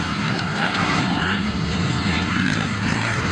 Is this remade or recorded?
remade